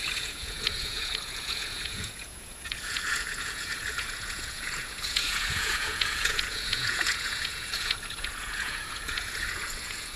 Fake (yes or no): yes